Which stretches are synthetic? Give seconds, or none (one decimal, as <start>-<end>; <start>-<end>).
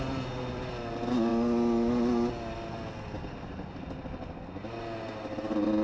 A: none